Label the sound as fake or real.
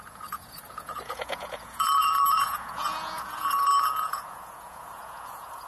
fake